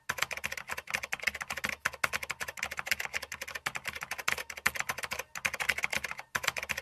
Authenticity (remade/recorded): recorded